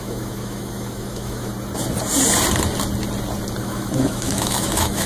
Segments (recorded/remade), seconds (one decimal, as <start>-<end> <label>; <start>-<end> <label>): 0.0-1.5 remade; 1.5-3.6 recorded; 3.6-5.1 remade